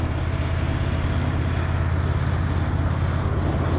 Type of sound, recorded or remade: recorded